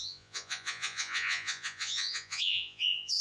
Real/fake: fake